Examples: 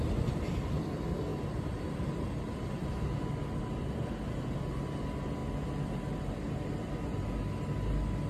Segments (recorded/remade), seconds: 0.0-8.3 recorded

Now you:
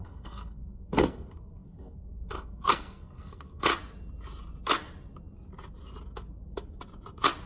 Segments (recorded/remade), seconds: 0.0-3.7 remade; 3.7-7.5 recorded

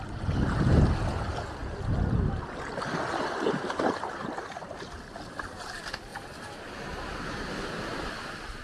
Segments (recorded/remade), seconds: 0.0-8.6 recorded

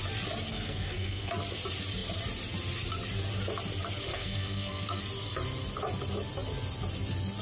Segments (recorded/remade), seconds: 0.0-0.5 recorded; 0.5-1.3 remade; 1.3-4.1 recorded; 4.1-5.0 remade; 5.0-7.4 recorded